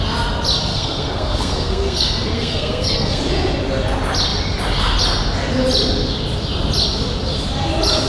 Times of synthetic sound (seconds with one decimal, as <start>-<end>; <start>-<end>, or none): 0.7-3.2